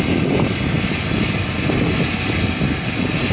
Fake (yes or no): no